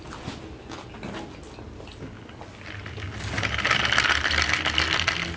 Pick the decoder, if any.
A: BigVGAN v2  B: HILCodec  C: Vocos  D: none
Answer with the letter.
D